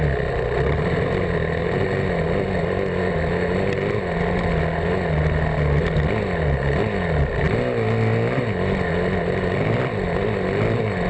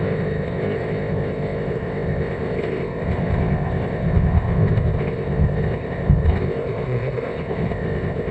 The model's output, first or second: second